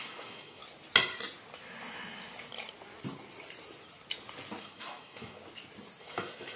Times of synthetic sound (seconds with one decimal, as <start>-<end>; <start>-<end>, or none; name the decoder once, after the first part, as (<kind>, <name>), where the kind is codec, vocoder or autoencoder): 0.0-0.6 (autoencoder, DAC-VAE); 4.6-5.4; 6.0-6.6